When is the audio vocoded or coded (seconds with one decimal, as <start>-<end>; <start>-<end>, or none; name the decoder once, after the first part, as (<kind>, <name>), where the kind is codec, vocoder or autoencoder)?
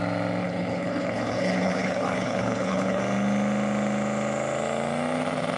0.4-3.0 (codec, HILCodec)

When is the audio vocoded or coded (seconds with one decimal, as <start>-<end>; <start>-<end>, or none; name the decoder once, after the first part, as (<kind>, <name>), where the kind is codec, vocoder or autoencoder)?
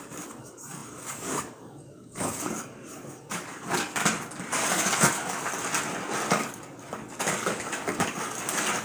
0.0-4.0 (codec, DAC); 4.5-5.5; 6.3-8.8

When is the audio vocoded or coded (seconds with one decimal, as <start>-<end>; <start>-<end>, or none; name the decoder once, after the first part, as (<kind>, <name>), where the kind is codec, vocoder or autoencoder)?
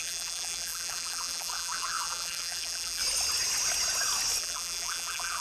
0.0-3.0 (vocoder, BigVGAN v2); 4.4-5.4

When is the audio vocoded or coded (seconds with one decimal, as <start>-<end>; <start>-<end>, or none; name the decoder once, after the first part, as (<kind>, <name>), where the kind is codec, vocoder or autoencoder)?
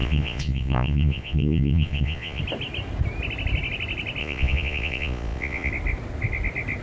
0.0-2.4 (vocoder, Vocos); 4.2-5.7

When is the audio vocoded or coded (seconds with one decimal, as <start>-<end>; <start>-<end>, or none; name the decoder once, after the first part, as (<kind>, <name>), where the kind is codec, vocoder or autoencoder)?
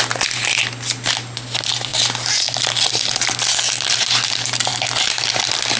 none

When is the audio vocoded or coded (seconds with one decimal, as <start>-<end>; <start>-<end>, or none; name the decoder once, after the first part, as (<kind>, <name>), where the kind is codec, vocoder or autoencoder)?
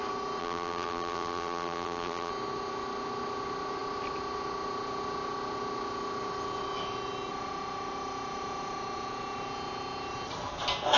0.4-2.3 (vocoder, BigVGAN v2)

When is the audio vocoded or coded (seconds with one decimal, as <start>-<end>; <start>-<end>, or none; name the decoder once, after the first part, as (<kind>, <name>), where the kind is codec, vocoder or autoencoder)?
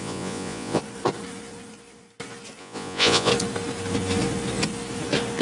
0.0-0.8 (vocoder, Vocos); 2.6-3.3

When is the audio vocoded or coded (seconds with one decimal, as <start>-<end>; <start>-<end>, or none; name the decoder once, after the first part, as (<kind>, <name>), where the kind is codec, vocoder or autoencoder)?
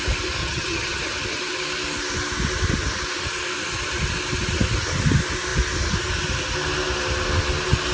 0.4-1.0 (vocoder, HiFi-GAN)